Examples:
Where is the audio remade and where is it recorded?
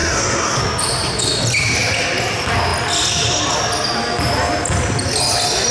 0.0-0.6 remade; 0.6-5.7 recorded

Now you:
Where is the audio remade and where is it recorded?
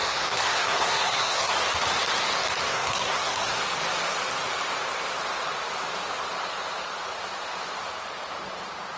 0.0-1.5 remade; 1.5-2.7 recorded; 2.7-3.6 remade; 3.6-9.0 recorded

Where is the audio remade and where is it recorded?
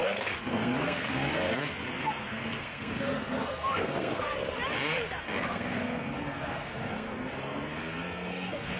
0.0-4.3 remade; 4.3-5.2 recorded; 5.2-8.8 remade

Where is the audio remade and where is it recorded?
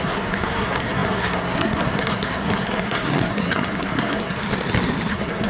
0.0-4.4 remade; 4.4-5.1 recorded; 5.1-5.5 remade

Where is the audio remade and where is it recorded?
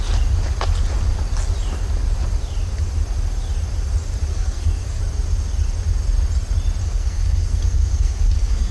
0.0-4.3 recorded; 4.3-5.0 remade; 5.0-6.8 recorded; 6.8-8.7 remade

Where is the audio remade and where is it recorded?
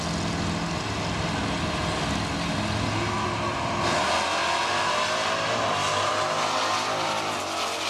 0.0-7.9 recorded